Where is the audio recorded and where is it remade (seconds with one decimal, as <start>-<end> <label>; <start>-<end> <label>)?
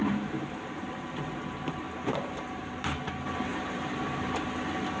0.0-3.0 remade; 3.0-3.5 recorded; 3.5-4.4 remade; 4.4-5.0 recorded